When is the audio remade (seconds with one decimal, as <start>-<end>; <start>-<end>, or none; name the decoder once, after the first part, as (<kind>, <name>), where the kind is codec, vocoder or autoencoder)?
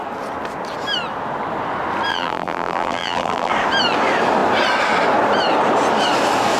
2.1-3.5 (vocoder, BigVGAN v2)